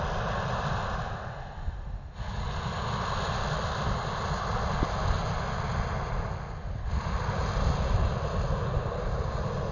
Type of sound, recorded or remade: recorded